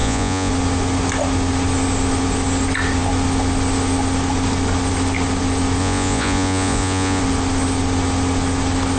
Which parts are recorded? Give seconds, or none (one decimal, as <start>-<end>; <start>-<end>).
0.5-5.8; 7.2-9.0